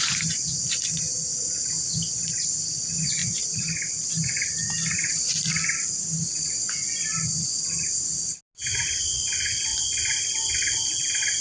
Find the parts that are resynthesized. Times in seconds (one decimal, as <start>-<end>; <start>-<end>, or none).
3.2-8.4; 9.7-10.3